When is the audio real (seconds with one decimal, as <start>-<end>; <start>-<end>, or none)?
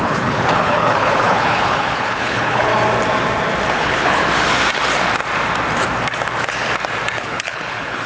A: 2.7-3.7; 4.2-7.1